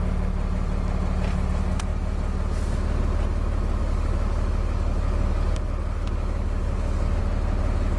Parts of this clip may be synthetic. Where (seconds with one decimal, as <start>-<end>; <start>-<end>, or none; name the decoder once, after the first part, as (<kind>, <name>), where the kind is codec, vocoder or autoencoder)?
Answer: 3.8-7.2 (codec, DAC)